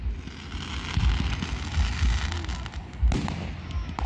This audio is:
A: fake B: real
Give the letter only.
B